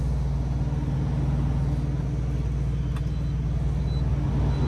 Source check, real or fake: real